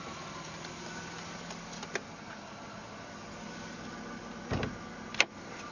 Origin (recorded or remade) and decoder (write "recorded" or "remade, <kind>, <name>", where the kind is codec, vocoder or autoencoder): recorded